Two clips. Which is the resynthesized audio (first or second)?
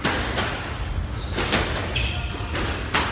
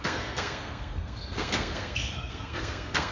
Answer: second